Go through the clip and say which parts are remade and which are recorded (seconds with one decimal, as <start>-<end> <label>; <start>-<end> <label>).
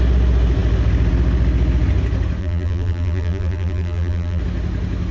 0.0-2.4 recorded; 2.4-4.4 remade; 4.4-5.1 recorded